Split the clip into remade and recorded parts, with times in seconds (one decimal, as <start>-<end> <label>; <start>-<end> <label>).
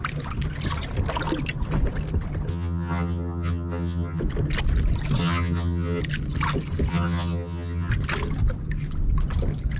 0.0-2.5 recorded; 2.5-4.2 remade; 4.2-5.2 recorded; 5.2-6.0 remade; 6.0-6.9 recorded; 6.9-7.9 remade; 7.9-9.8 recorded